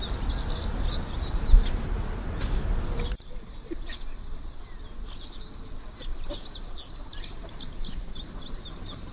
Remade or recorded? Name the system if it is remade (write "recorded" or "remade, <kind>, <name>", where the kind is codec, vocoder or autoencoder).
recorded